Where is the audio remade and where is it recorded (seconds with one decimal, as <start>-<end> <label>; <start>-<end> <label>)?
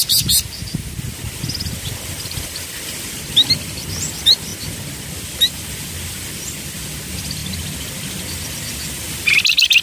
0.0-9.8 recorded